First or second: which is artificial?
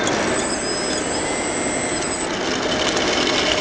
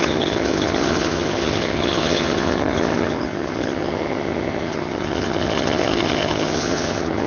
second